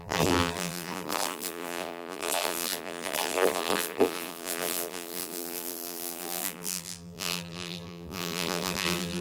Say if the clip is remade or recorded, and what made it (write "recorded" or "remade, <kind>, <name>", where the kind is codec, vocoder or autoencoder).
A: remade, vocoder, BigVGAN v2